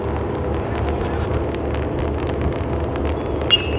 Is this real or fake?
real